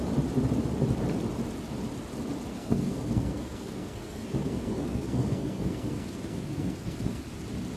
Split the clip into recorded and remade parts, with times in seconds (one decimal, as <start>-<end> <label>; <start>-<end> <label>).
0.0-2.5 recorded; 2.5-7.2 remade; 7.2-7.8 recorded

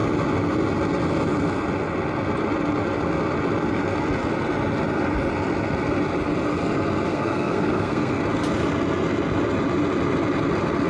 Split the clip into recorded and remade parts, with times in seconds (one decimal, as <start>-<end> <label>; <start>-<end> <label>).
0.0-7.1 recorded; 7.1-8.2 remade; 8.2-10.9 recorded

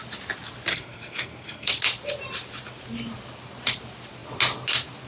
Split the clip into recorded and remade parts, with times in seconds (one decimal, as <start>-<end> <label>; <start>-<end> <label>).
0.0-0.7 recorded; 0.7-1.7 remade; 1.7-5.1 recorded

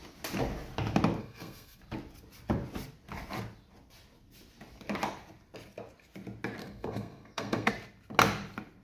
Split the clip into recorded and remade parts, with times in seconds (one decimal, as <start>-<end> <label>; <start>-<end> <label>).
0.0-1.2 recorded; 1.2-1.8 remade; 1.8-6.6 recorded; 6.6-7.7 remade; 7.7-8.8 recorded

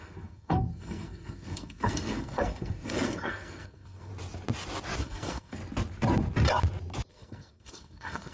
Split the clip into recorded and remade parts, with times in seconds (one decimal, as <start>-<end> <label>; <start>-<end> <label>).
0.0-4.1 remade; 4.1-5.0 recorded; 5.0-5.6 remade; 5.6-7.1 recorded; 7.1-8.3 remade